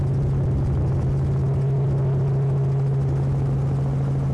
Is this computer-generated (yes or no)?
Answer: no